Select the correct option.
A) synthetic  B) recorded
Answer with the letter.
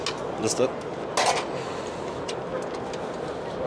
B